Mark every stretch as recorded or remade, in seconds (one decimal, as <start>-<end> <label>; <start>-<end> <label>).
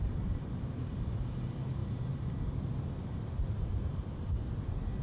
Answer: 0.0-5.0 remade